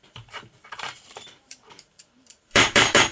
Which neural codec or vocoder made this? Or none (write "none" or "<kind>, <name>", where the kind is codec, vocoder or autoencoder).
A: vocoder, BigVGAN v2